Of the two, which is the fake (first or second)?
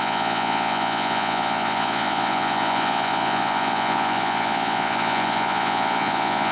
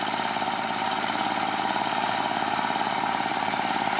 first